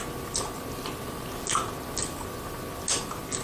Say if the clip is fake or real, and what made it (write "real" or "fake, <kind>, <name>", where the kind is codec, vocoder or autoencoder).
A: real